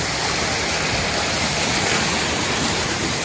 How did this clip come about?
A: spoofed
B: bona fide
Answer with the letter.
B